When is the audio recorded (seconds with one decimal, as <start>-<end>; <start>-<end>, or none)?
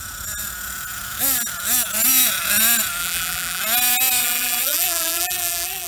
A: 0.0-3.0; 3.6-4.2